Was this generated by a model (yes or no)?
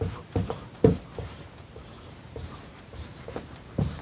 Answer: yes